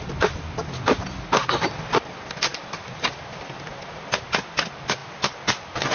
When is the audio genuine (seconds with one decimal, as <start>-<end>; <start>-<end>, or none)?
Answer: 0.0-5.9